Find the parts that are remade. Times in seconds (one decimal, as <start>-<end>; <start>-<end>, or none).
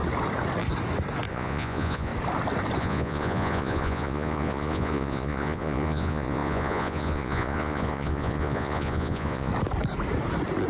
1.3-2.1; 2.8-9.5